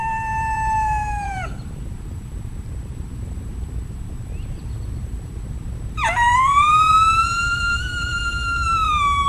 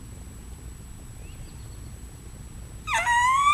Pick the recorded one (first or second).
second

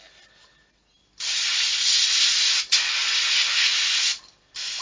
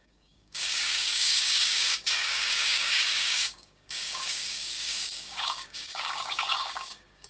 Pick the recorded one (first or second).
first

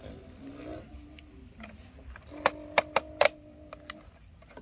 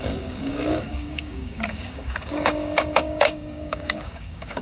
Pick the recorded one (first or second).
first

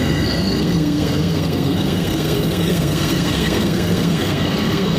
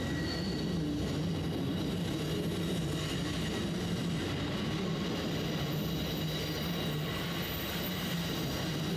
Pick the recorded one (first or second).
second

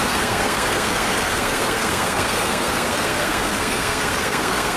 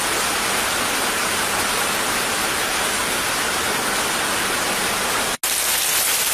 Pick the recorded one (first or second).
second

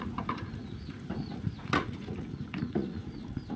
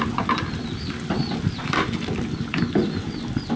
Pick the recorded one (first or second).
second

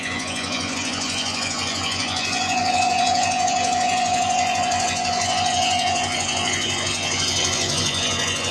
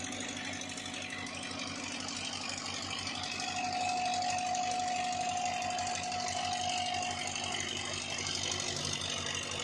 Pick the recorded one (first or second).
second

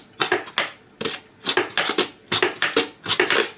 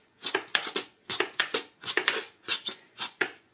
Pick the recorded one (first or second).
first